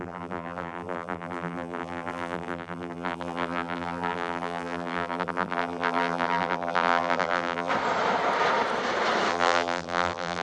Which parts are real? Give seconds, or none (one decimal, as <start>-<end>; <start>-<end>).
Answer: 7.7-9.3